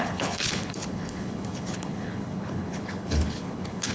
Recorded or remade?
remade